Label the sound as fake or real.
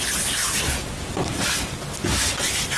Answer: real